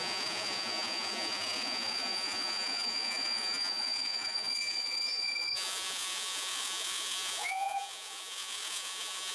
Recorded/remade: remade